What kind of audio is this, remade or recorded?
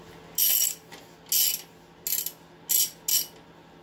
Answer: recorded